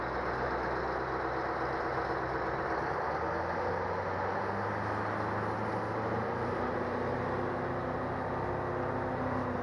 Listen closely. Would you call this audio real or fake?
real